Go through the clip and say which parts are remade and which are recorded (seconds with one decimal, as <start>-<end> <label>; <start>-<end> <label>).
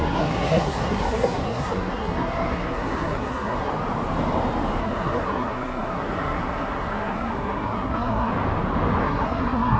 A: 0.0-3.7 remade; 3.7-4.8 recorded; 4.8-8.3 remade; 8.3-9.0 recorded; 9.0-9.8 remade